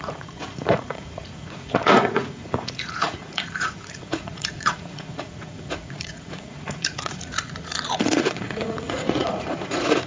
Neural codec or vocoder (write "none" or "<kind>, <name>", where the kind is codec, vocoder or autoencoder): vocoder, Vocos